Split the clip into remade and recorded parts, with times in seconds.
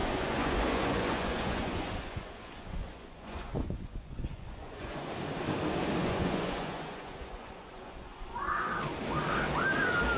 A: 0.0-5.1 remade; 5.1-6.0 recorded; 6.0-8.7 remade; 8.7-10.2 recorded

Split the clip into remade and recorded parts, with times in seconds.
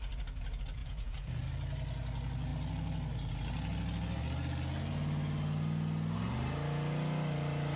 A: 0.0-0.8 recorded; 0.8-1.4 remade; 1.4-7.8 recorded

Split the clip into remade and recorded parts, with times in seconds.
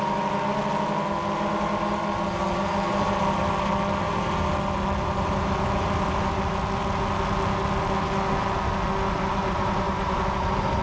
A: 0.0-9.4 recorded; 9.4-10.2 remade; 10.2-10.8 recorded